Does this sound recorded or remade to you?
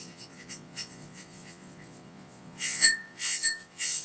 remade